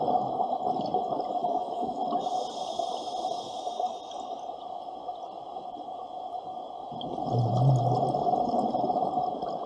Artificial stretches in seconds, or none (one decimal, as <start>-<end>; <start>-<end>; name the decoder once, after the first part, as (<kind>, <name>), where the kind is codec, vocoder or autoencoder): 1.4-2.0 (autoencoder, DAC-VAE)